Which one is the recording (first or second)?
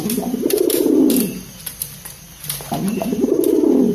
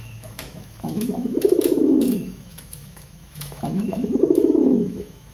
first